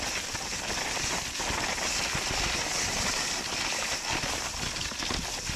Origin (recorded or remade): recorded